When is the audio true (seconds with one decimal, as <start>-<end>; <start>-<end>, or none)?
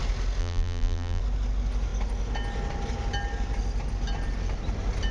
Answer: 0.0-0.4; 1.2-5.1